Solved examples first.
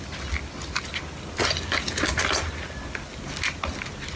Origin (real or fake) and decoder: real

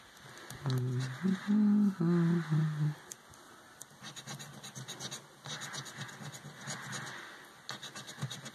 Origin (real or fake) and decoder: real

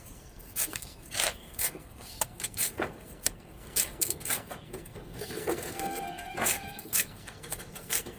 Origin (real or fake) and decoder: fake, codec, SNAC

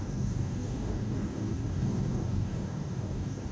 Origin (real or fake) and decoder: fake, codec, DAC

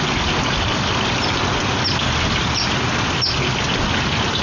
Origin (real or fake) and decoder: real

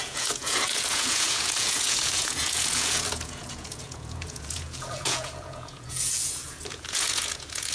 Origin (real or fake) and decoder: fake, vocoder, Vocos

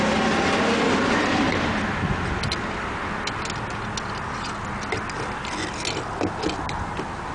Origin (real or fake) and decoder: real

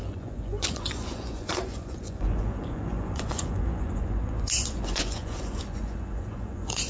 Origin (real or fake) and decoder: fake, vocoder, Vocos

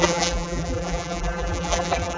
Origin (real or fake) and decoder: fake, vocoder, BigVGAN v2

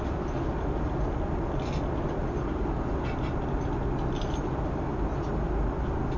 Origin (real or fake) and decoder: real